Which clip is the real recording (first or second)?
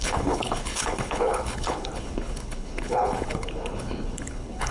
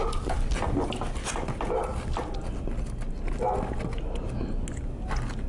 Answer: second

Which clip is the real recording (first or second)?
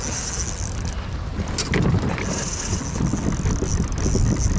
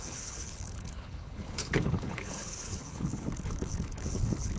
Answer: first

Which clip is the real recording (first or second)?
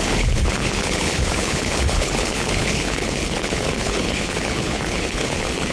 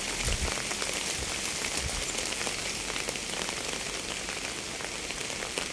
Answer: second